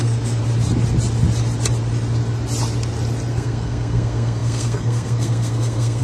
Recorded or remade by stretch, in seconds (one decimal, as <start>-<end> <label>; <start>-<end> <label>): 0.0-0.4 remade; 0.4-3.3 recorded; 3.3-6.0 remade